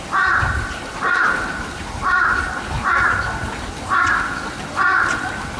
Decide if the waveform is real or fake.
real